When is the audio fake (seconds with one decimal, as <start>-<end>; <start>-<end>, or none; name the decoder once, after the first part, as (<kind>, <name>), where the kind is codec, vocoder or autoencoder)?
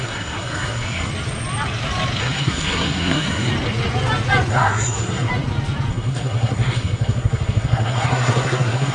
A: 0.0-1.1 (codec, SNAC); 2.2-3.5; 4.5-5.3; 5.9-8.9